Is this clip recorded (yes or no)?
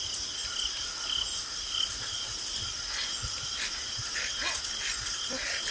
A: yes